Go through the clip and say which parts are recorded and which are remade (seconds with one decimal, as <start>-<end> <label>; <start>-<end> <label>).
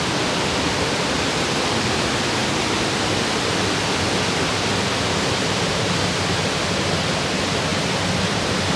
0.0-8.8 recorded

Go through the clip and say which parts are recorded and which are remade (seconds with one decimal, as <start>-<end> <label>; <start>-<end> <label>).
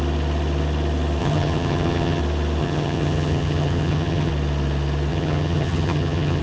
0.0-1.2 recorded; 1.2-2.2 remade; 2.2-2.6 recorded; 2.6-4.3 remade; 4.3-5.1 recorded; 5.1-6.4 remade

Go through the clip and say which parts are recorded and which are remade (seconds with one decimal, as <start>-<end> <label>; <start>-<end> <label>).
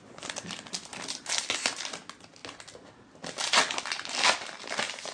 0.0-5.1 recorded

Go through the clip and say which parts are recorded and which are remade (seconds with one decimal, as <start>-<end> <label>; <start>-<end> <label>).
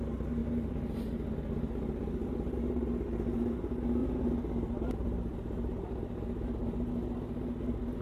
0.0-0.4 recorded; 0.4-1.0 remade; 1.0-4.0 recorded; 4.0-6.9 remade; 6.9-8.0 recorded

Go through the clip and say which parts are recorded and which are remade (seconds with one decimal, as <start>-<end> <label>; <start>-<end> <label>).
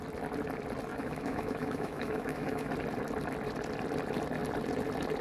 0.0-0.9 recorded; 0.9-2.7 remade; 2.7-5.2 recorded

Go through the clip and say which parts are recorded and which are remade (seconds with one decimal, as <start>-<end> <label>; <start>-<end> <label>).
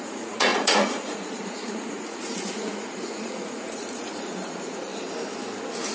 0.0-4.9 remade; 4.9-5.9 recorded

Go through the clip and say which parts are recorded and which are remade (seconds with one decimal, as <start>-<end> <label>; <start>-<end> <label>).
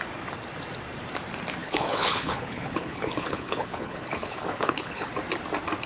0.0-1.6 recorded; 1.6-5.1 remade; 5.1-5.9 recorded